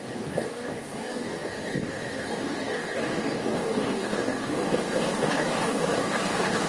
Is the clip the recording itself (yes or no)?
no